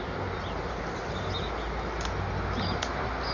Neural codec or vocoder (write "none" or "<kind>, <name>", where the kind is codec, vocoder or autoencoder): none